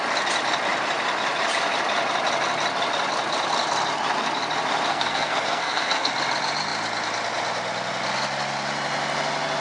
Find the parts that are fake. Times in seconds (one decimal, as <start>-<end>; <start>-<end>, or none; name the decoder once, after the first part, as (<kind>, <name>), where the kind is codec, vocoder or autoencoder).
4.9-6.1 (codec, SNAC)